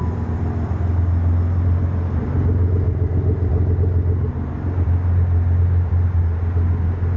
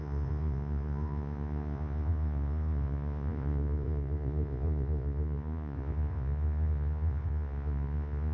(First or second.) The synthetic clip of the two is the second